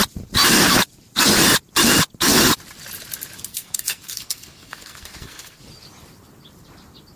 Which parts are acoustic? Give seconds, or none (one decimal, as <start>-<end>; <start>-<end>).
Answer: 0.0-3.5; 5.6-7.2